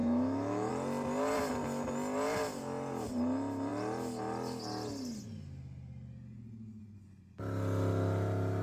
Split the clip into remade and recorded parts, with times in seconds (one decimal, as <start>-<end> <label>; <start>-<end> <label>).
0.0-0.7 remade; 0.7-8.6 recorded